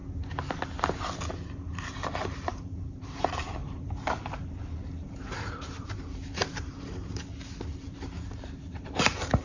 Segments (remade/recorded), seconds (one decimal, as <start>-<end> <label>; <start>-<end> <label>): 0.0-1.6 recorded; 1.6-7.0 remade; 7.0-7.8 recorded; 7.8-9.4 remade